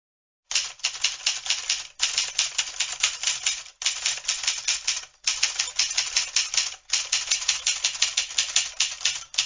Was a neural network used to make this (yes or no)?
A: no